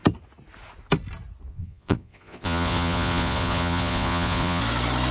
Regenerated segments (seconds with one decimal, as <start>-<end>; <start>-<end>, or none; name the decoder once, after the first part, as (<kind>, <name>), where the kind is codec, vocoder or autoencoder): 1.5-4.6 (vocoder, Vocos)